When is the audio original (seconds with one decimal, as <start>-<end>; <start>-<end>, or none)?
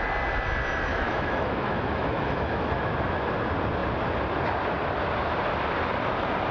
0.0-0.9; 2.7-6.5